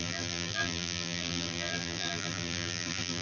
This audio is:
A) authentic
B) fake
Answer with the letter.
B